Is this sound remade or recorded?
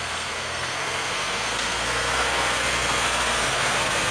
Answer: remade